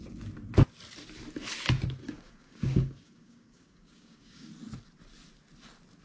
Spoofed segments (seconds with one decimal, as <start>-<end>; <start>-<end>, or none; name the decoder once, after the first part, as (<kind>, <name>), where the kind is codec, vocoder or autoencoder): 2.0-4.5 (codec, DAC)